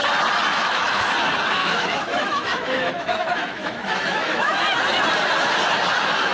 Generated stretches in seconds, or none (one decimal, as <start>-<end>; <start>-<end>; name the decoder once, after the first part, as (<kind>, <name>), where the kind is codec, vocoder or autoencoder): 0.5-1.1 (autoencoder, DAC-VAE); 1.6-4.6